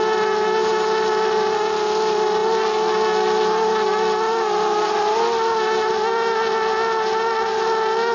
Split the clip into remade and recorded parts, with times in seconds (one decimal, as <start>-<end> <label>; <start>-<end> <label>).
0.0-8.1 recorded